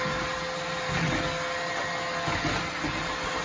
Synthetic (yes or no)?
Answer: no